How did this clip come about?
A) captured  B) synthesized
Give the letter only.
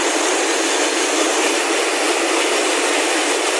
A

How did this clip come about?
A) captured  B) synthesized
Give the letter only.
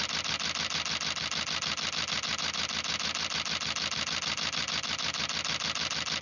A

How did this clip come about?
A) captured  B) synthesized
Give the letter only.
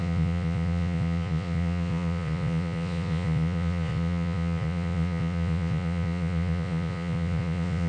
B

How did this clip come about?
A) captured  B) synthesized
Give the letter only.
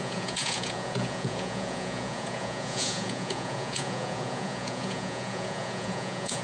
B